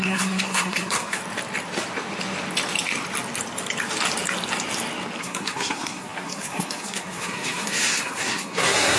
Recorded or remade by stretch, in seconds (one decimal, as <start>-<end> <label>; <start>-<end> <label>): 0.0-1.2 remade; 1.2-5.2 recorded; 5.2-9.0 remade